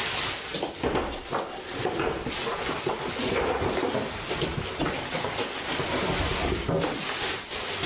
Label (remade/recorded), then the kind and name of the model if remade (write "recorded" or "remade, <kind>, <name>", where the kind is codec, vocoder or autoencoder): recorded